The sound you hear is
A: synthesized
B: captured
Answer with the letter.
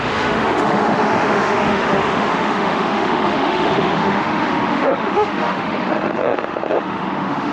A